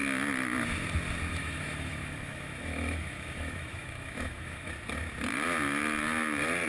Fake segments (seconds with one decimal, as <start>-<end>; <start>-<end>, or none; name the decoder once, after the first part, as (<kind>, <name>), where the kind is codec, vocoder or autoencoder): 1.3-4.7 (autoencoder, DAC-VAE)